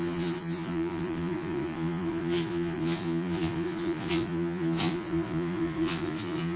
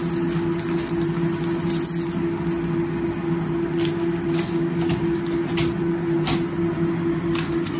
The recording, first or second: second